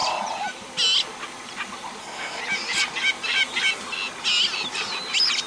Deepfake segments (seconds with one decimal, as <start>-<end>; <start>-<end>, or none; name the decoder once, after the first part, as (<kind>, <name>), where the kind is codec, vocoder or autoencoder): 2.0-2.4 (codec, SNAC)